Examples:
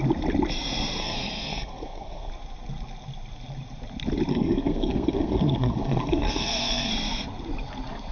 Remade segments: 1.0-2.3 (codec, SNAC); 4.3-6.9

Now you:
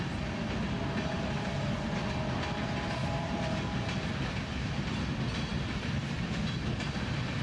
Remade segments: 3.0-3.6 (vocoder, BigVGAN v2)